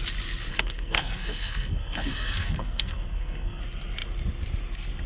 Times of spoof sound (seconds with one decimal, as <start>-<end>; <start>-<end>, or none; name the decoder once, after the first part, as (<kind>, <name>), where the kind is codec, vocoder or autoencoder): 0.5-3.6 (codec, SNAC)